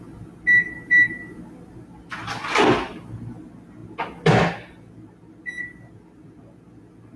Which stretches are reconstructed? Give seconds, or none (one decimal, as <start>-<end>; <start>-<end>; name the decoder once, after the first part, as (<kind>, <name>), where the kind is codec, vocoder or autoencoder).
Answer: none